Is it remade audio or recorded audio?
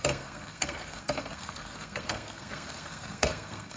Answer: remade